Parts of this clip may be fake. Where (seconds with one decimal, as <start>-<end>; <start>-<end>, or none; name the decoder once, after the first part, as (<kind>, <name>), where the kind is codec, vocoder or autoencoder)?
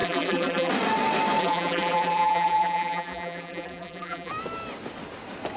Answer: 0.0-0.7 (vocoder, BigVGAN v2); 1.4-4.3